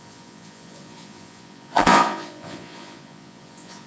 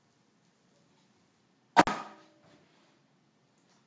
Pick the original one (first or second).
second